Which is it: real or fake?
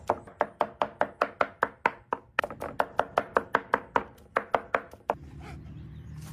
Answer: real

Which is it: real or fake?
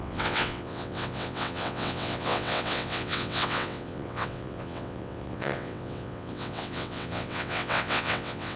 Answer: fake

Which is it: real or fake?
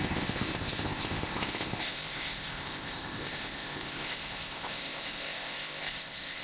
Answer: fake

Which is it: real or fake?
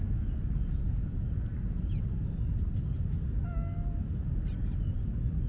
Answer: real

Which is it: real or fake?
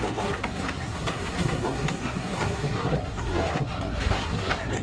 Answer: fake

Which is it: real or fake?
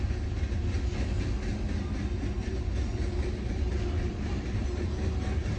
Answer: real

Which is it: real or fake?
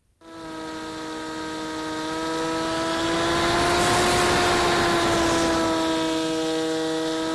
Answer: real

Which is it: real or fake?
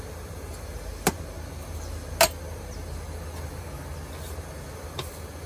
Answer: real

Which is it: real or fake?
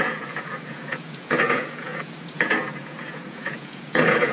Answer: fake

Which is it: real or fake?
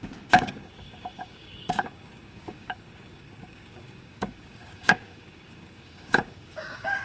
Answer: fake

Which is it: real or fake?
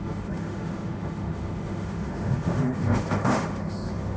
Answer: fake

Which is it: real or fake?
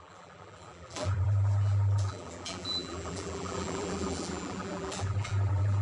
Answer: fake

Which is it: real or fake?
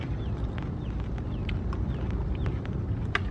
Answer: real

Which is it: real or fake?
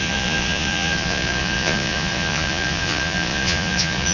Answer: fake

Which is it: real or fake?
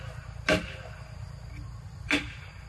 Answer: real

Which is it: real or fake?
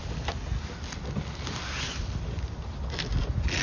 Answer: real